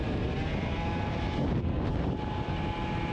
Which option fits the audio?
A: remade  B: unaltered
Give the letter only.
B